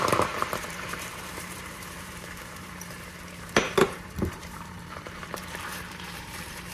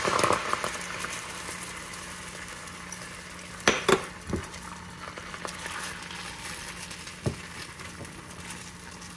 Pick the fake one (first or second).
first